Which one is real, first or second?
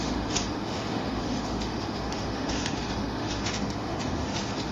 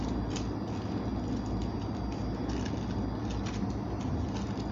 second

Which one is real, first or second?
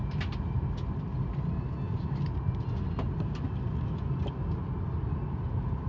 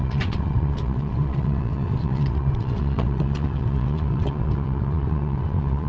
first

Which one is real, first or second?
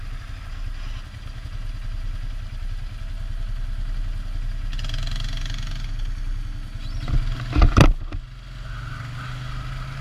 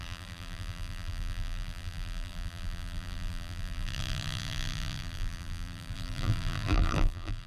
first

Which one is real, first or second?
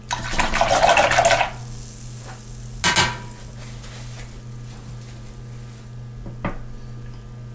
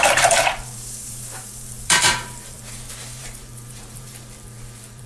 first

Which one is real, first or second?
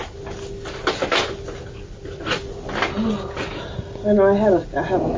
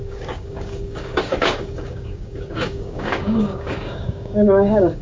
first